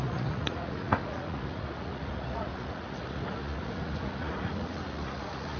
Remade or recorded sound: remade